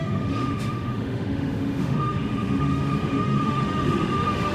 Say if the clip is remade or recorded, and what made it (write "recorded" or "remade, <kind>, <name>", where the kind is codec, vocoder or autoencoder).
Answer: remade, autoencoder, DAC-VAE